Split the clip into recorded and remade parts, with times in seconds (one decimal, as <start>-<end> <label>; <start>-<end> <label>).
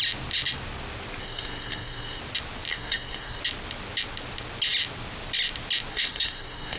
0.0-1.2 recorded; 1.2-2.2 remade; 2.2-2.7 recorded; 2.7-3.4 remade; 3.4-5.9 recorded; 5.9-6.8 remade